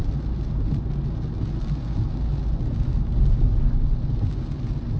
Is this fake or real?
real